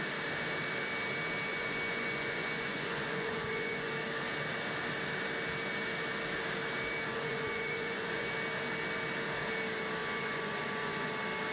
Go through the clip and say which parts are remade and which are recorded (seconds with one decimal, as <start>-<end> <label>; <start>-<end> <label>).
0.0-1.5 recorded; 1.5-3.9 remade; 3.9-7.1 recorded; 7.1-8.3 remade; 8.3-10.0 recorded; 10.0-11.1 remade; 11.1-11.5 recorded

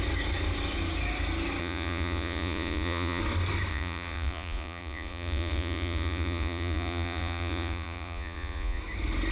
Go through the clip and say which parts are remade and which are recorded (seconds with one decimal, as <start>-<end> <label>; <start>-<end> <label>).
0.0-1.6 recorded; 1.6-3.2 remade; 3.2-3.7 recorded; 3.7-8.8 remade; 8.8-9.3 recorded

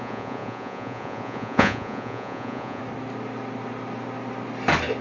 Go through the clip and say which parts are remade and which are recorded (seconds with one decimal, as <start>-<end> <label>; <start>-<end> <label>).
0.0-2.8 remade; 2.8-5.0 recorded

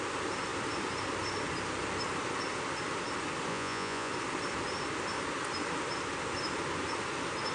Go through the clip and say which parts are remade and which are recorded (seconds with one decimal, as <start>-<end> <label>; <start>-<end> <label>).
0.0-3.5 recorded; 3.5-4.1 remade; 4.1-7.5 recorded

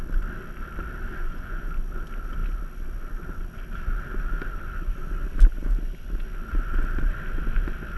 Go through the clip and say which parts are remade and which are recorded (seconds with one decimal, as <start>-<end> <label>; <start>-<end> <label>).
0.0-1.2 recorded; 1.2-1.7 remade; 1.7-8.0 recorded

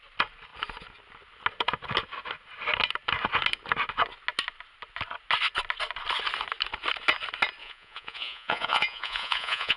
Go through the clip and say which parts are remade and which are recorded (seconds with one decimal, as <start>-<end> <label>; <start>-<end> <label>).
0.0-7.6 recorded; 7.6-9.8 remade